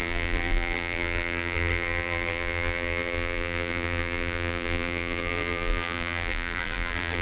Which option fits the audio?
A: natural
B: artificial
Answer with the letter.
B